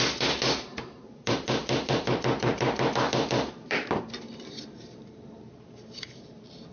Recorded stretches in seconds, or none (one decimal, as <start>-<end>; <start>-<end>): none